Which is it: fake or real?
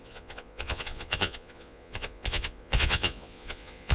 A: fake